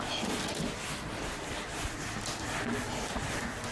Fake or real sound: real